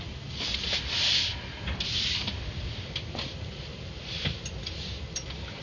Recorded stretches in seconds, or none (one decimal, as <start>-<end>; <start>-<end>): none